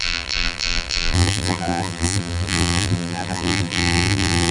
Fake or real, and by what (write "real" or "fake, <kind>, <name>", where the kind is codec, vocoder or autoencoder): fake, vocoder, BigVGAN v2